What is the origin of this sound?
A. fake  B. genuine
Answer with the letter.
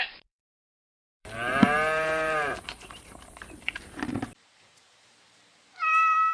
A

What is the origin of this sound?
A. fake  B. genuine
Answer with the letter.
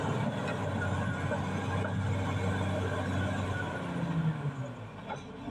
B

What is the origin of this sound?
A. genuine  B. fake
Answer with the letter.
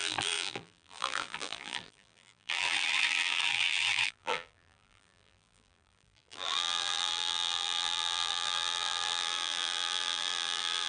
B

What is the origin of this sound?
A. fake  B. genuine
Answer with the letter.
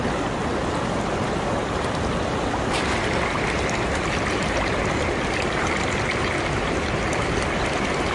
B